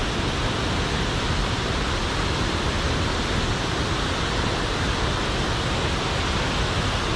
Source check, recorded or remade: recorded